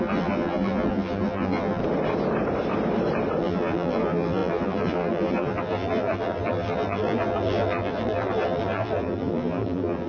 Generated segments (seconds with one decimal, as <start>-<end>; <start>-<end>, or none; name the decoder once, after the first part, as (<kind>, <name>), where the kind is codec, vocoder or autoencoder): 0.0-1.8 (vocoder, BigVGAN v2); 3.4-10.1

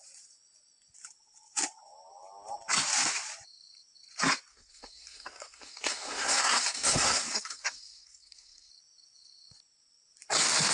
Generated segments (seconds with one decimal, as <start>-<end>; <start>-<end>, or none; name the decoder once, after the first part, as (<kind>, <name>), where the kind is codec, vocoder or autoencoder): 4.5-8.7 (codec, SNAC)

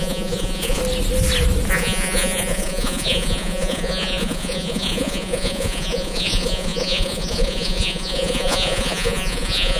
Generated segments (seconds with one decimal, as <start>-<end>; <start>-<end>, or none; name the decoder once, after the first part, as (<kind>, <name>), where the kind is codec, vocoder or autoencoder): 0.0-0.8 (vocoder, Vocos); 1.7-9.8

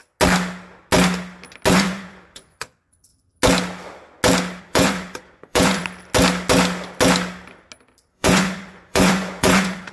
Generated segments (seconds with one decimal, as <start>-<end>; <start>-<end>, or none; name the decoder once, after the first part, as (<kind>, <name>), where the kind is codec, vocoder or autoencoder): 1.7-3.1 (vocoder, Vocos); 4.6-5.8; 8.1-9.9